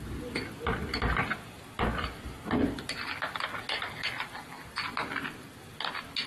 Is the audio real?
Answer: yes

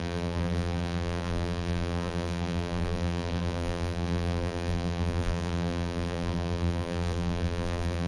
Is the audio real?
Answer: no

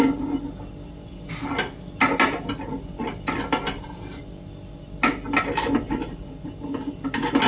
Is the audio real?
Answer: yes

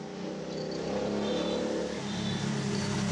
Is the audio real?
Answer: yes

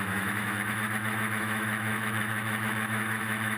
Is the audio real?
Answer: no